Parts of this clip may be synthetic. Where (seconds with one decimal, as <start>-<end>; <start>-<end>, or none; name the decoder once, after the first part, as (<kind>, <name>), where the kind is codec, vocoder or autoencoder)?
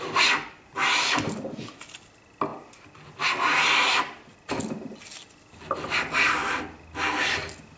none